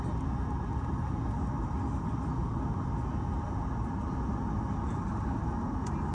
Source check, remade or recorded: recorded